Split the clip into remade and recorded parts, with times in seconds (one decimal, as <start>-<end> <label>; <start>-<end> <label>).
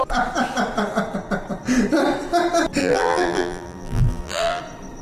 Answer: 0.0-2.8 recorded; 2.8-4.6 remade; 4.6-5.0 recorded